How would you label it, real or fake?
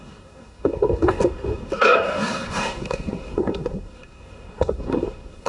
fake